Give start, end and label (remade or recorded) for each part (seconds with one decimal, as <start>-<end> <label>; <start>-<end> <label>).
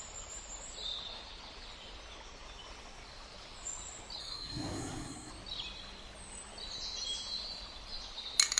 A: 0.0-4.2 recorded; 4.2-5.3 remade; 5.3-8.6 recorded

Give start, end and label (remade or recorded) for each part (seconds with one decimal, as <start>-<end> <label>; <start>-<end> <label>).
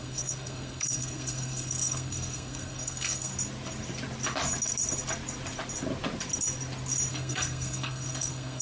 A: 0.0-3.3 remade; 3.3-7.1 recorded; 7.1-8.6 remade